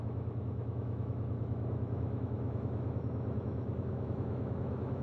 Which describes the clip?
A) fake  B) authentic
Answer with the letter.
A